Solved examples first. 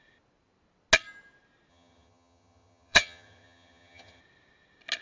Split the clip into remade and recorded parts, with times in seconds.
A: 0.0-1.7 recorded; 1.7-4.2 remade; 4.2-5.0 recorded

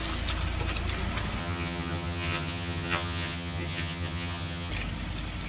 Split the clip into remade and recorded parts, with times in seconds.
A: 0.0-1.4 recorded; 1.4-4.7 remade; 4.7-5.5 recorded

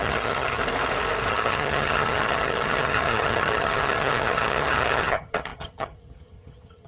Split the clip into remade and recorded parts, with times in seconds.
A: 0.0-0.6 remade; 0.6-1.3 recorded; 1.3-6.9 remade

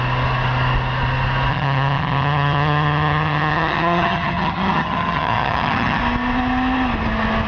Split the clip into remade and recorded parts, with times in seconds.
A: 0.0-1.5 recorded; 1.5-6.0 remade; 6.0-7.5 recorded

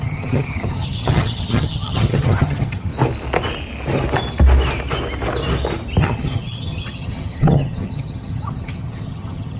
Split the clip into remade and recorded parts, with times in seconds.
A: 0.0-2.9 remade; 2.9-6.0 recorded; 6.0-9.6 remade

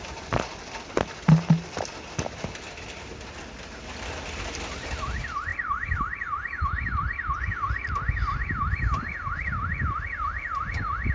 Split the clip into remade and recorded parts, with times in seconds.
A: 0.0-11.1 recorded